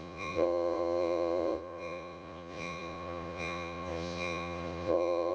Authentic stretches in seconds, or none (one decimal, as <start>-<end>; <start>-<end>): none